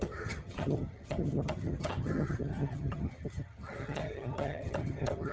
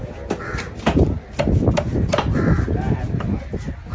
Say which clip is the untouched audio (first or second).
second